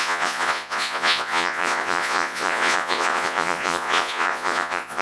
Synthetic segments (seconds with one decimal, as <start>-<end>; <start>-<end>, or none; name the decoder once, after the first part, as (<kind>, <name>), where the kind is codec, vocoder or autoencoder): 0.0-5.0 (vocoder, Vocos)